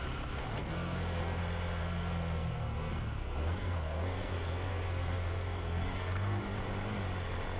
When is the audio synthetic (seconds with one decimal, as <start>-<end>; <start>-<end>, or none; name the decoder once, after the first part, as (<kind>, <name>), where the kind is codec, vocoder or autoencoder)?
0.6-1.4 (codec, SNAC); 1.8-6.4